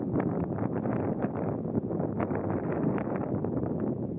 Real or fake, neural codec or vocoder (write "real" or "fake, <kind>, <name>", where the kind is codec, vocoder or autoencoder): fake, vocoder, BigVGAN v2